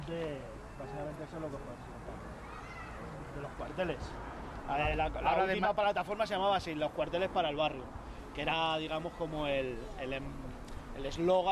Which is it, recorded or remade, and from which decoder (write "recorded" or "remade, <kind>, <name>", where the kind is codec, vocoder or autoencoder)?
recorded